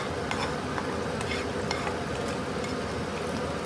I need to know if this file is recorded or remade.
recorded